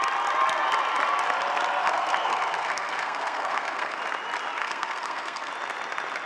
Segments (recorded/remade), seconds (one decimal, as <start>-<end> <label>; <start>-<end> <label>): 0.0-1.8 recorded; 1.8-4.0 remade; 4.0-4.6 recorded; 4.6-5.5 remade; 5.5-6.3 recorded